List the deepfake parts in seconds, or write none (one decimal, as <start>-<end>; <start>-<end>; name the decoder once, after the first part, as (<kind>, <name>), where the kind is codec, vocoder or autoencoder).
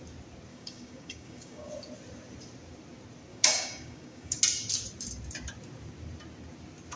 0.5-1.7 (codec, DAC); 3.3-4.4